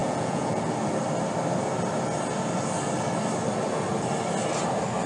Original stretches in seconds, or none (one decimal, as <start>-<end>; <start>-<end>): 0.6-5.1

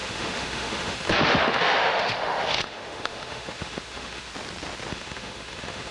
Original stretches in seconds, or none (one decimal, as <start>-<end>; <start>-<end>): 4.3-4.9

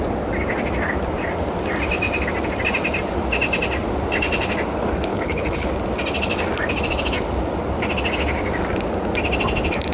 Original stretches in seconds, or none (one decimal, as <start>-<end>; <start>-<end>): 0.0-5.1; 5.7-9.9

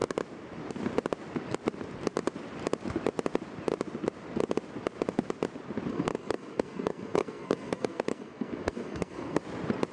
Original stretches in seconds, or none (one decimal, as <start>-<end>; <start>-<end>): 0.0-5.9; 9.4-9.9

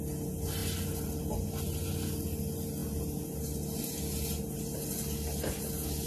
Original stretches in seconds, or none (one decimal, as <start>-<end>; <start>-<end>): 0.0-6.1

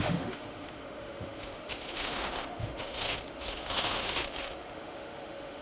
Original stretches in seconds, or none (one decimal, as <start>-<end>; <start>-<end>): none

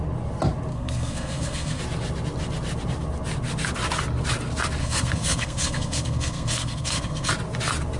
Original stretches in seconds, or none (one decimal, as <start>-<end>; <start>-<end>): 0.0-0.7; 1.8-4.8; 7.3-8.0

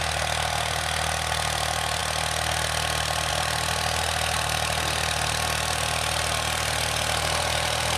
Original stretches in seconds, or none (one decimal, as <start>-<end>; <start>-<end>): 0.0-8.0